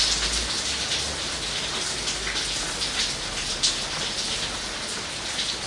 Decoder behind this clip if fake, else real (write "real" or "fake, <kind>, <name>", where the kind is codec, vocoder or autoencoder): real